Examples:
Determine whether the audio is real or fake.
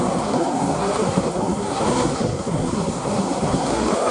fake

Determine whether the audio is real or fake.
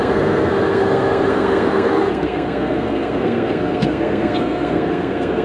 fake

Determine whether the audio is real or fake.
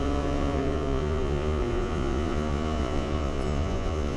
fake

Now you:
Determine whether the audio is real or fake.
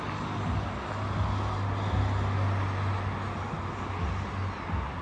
real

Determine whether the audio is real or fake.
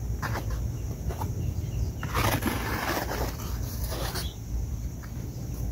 real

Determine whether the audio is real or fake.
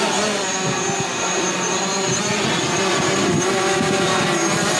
real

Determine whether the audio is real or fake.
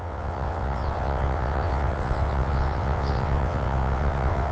fake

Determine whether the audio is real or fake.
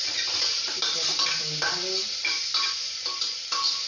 real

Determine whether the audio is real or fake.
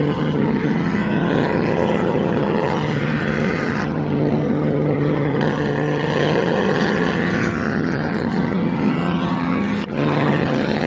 fake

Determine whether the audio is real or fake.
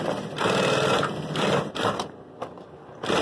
real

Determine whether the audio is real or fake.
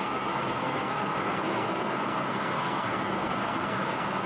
fake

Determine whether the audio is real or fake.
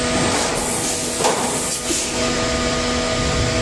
real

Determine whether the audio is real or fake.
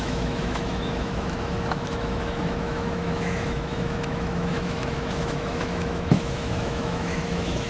fake